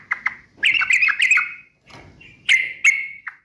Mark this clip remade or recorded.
recorded